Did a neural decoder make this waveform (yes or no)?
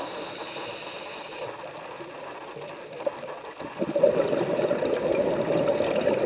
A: no